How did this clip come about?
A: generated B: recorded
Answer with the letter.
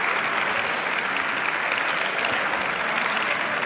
B